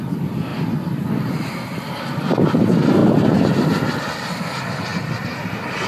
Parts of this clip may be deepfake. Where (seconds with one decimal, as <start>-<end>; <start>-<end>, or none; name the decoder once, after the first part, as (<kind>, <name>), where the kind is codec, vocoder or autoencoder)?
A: 0.5-2.6 (vocoder, BigVGAN v2); 4.9-5.4

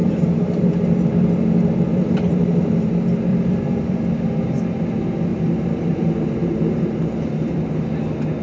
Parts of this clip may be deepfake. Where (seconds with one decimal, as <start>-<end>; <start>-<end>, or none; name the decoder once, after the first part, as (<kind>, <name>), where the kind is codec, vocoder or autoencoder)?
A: 0.0-0.6 (vocoder, BigVGAN v2); 1.9-2.9; 3.3-4.0; 5.3-7.9

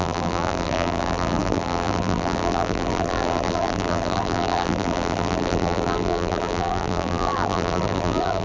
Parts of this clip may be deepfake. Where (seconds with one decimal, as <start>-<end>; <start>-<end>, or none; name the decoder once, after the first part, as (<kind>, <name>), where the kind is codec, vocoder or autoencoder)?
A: 0.0-8.4 (vocoder, BigVGAN v2)